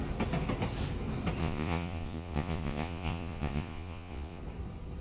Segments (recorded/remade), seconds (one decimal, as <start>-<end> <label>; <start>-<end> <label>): 0.0-1.4 recorded; 1.4-4.4 remade; 4.4-5.0 recorded